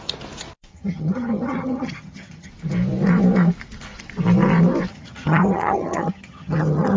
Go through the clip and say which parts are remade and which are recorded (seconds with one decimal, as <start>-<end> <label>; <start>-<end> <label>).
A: 0.0-0.7 recorded; 0.7-2.5 remade; 2.5-4.9 recorded; 4.9-7.0 remade